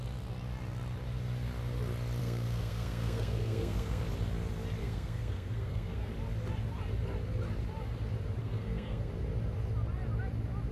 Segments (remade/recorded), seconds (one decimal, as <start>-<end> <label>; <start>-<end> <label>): 0.0-2.2 recorded; 2.2-4.0 remade; 4.0-4.8 recorded; 4.8-6.1 remade; 6.1-8.4 recorded; 8.4-9.1 remade; 9.1-10.7 recorded